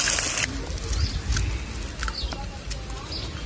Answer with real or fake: real